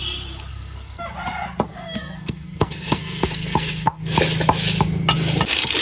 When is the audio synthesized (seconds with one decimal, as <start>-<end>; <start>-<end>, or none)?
0.5-1.0; 1.7-4.0